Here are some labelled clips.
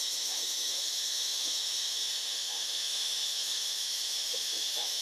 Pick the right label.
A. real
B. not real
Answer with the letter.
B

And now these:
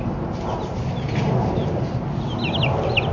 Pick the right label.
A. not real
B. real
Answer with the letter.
B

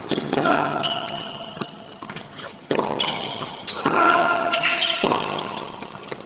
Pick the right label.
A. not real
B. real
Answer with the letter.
A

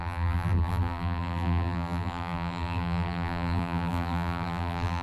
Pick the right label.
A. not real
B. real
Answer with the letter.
A